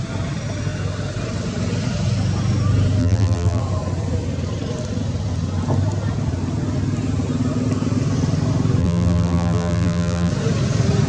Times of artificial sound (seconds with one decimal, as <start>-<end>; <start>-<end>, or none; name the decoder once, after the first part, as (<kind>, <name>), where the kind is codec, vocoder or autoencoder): 3.0-3.6 (vocoder, BigVGAN v2); 8.8-10.3